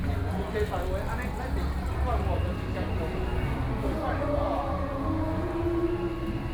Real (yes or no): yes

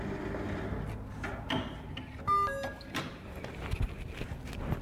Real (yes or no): yes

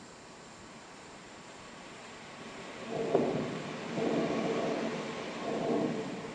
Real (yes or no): yes